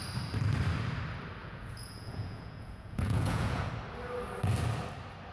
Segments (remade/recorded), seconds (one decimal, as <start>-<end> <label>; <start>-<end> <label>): 0.0-1.4 recorded; 1.4-3.7 remade; 3.7-5.3 recorded